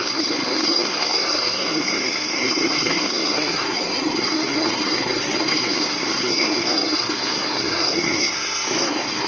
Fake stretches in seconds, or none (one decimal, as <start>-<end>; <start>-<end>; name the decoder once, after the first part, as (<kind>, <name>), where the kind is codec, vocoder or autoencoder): 0.0-9.3 (codec, SNAC)